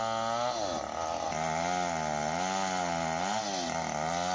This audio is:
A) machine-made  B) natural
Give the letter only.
B